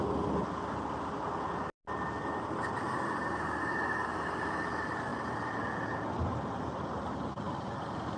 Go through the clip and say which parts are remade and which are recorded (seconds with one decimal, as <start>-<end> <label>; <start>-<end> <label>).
0.0-8.2 recorded